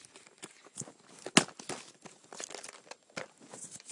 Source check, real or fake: real